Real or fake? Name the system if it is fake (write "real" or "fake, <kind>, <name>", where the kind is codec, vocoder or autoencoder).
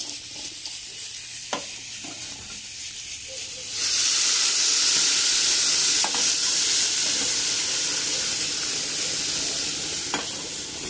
real